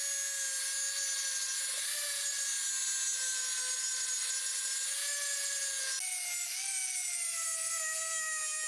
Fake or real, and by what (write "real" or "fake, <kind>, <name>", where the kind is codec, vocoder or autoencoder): real